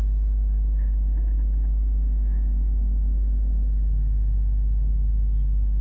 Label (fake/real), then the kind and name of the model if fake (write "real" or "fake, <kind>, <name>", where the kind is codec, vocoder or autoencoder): real